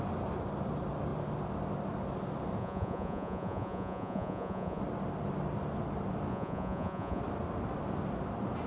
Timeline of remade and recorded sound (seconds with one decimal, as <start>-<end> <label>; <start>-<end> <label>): 0.0-2.6 recorded; 2.6-4.8 remade; 4.8-6.3 recorded; 6.3-7.2 remade; 7.2-8.7 recorded